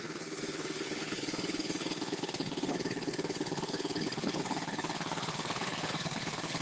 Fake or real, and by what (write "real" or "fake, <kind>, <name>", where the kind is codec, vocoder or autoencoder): fake, codec, HILCodec